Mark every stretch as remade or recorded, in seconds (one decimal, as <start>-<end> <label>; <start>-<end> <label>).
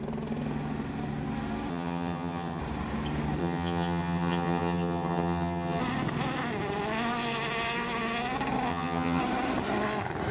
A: 0.0-1.7 recorded; 1.7-2.6 remade; 2.6-3.4 recorded; 3.4-5.8 remade; 5.8-8.7 recorded; 8.7-9.2 remade; 9.2-10.3 recorded